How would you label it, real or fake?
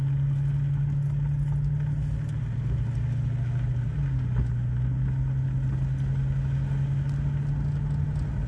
real